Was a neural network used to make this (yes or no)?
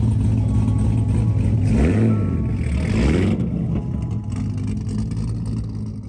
no